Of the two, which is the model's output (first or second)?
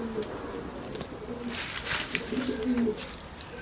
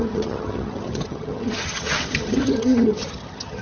second